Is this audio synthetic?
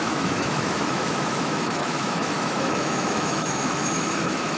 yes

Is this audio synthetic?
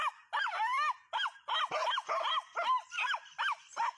no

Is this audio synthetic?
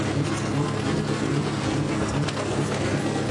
yes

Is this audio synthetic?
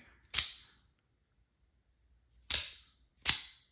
no